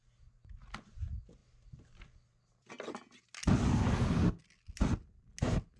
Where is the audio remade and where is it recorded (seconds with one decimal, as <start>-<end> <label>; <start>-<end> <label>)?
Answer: 0.0-5.8 recorded